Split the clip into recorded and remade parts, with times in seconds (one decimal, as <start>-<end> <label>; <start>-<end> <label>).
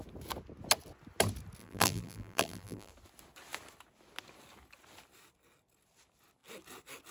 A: 0.0-1.6 recorded; 1.6-2.9 remade; 2.9-7.1 recorded